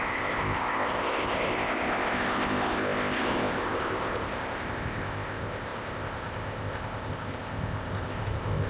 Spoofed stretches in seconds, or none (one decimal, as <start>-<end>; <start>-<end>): 0.0-8.7